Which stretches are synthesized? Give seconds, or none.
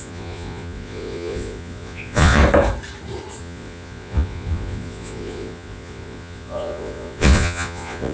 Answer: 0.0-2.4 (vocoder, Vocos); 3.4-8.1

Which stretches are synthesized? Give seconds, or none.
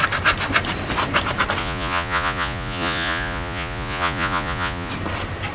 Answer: 1.6-4.9 (vocoder, Vocos)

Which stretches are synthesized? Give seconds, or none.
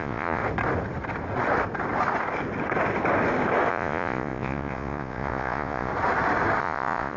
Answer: 0.0-0.4 (vocoder, Vocos); 3.7-5.9; 6.6-7.2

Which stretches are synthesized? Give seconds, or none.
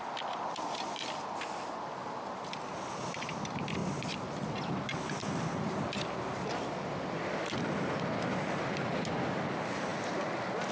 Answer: none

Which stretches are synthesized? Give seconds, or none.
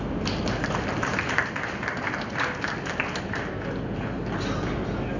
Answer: none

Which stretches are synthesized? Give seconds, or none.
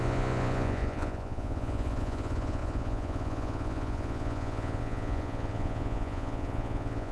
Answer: 0.0-7.1 (vocoder, Vocos)